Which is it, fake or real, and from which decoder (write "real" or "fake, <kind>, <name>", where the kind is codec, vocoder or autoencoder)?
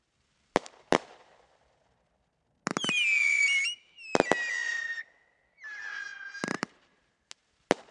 real